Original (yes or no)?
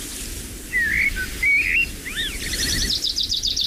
yes